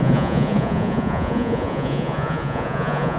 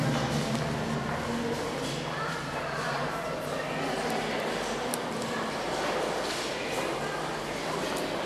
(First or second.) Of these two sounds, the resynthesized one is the first